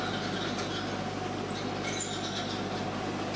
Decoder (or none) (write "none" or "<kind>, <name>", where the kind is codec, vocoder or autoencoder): none